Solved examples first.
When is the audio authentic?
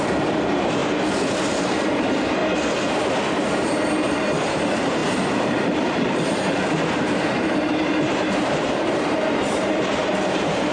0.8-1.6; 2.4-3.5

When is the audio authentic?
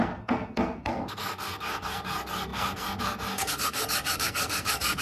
none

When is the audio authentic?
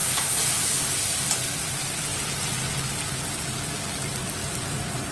0.0-5.1